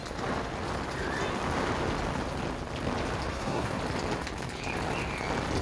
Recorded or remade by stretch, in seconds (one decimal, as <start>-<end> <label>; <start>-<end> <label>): 0.0-3.3 recorded; 3.3-3.8 remade; 3.8-5.6 recorded